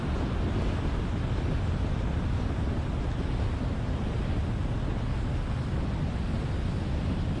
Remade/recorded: recorded